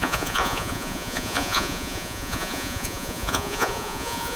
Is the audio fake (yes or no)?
yes